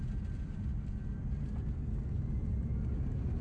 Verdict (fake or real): real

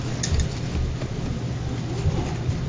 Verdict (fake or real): real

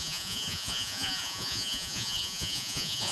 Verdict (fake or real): fake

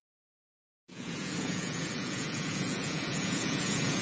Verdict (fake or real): fake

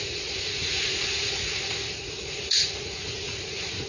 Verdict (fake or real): fake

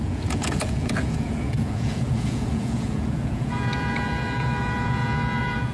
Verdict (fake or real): fake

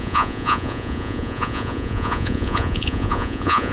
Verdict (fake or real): fake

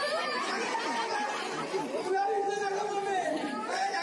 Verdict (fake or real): real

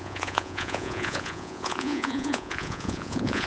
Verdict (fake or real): fake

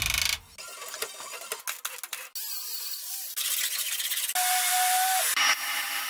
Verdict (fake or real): real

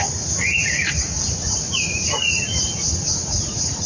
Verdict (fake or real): fake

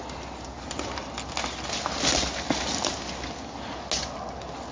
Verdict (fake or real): real